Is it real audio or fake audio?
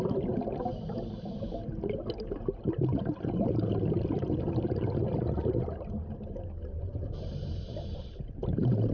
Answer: real